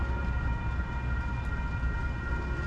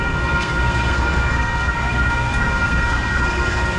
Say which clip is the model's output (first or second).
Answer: second